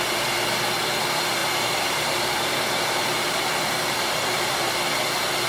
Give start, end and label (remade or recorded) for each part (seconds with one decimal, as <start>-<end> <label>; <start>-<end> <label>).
0.0-1.4 recorded; 1.4-4.7 remade; 4.7-5.5 recorded